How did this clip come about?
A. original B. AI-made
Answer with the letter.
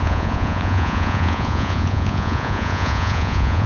B